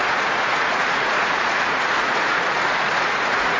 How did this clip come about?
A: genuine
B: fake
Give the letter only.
B